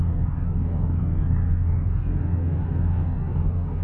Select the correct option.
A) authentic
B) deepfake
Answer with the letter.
B